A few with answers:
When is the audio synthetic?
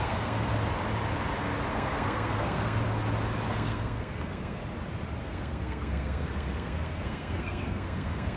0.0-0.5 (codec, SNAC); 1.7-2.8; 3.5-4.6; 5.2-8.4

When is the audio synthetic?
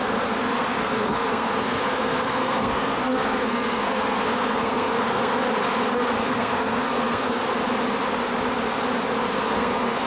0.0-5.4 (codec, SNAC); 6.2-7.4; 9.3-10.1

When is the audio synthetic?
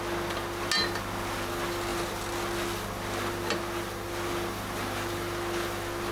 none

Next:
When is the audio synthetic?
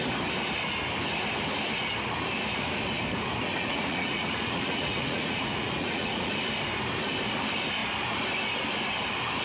3.5-6.3 (vocoder, Vocos)